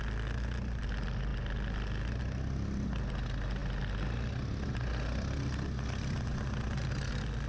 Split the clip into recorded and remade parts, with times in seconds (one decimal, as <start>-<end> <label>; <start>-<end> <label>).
0.0-7.5 recorded